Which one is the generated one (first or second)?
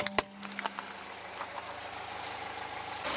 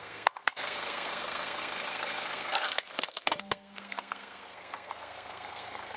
second